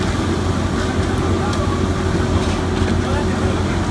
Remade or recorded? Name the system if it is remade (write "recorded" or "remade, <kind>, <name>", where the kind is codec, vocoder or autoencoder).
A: recorded